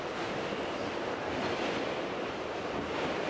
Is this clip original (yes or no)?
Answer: yes